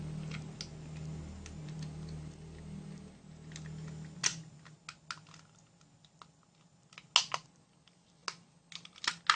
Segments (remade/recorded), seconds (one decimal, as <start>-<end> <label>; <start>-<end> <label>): 0.0-9.4 recorded